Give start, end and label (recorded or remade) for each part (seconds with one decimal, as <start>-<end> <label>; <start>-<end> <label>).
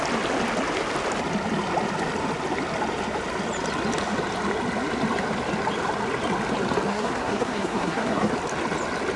0.0-6.9 recorded; 6.9-8.3 remade; 8.3-9.2 recorded